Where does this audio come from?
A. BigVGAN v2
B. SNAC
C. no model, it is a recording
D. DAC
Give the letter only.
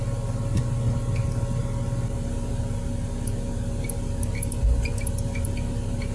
C